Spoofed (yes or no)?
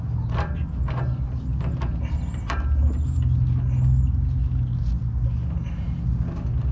no